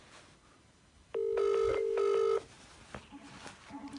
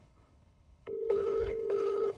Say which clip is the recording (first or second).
first